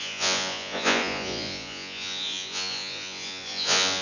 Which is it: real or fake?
fake